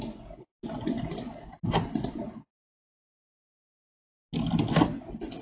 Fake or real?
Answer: real